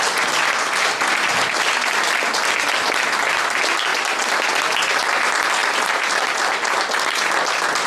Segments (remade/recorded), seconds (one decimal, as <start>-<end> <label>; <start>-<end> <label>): 0.0-3.9 recorded; 3.9-4.5 remade; 4.5-5.6 recorded; 5.6-7.9 remade